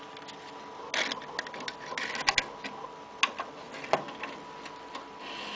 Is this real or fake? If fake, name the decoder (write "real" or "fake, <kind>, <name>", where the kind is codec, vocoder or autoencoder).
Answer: real